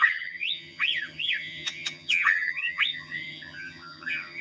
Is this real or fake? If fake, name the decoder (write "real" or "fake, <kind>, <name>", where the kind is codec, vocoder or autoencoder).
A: fake, vocoder, HiFi-GAN